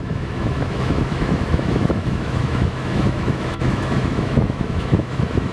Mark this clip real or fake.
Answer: fake